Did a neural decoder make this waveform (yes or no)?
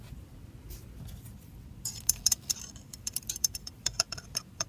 yes